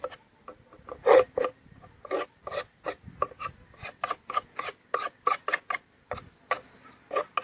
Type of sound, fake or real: real